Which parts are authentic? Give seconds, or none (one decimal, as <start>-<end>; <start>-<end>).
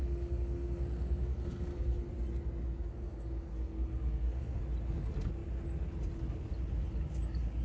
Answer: 2.1-2.9; 4.6-7.6